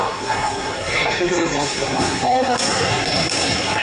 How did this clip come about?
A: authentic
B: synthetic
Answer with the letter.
B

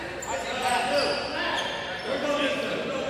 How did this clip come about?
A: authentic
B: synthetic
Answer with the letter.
A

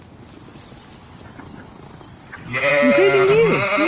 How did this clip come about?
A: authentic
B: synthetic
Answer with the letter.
A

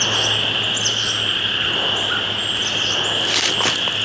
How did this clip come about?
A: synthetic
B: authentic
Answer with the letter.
B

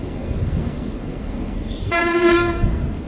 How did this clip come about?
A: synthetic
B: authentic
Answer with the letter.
A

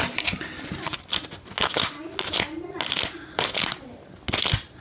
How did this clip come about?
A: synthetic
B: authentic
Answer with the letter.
B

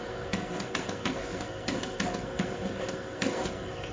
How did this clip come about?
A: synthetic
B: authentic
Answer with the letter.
A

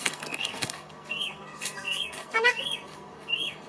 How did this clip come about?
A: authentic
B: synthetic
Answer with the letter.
B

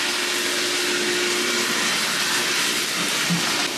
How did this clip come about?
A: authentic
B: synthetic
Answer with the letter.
A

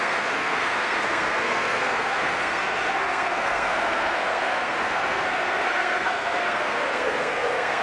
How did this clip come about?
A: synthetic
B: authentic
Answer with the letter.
A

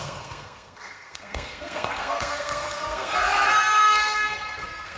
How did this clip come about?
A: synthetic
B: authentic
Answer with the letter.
A